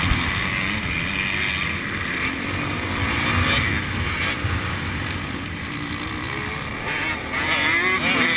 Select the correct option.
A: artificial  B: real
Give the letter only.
B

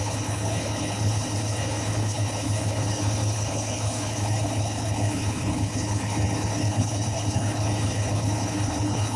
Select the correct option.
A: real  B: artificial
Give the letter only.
B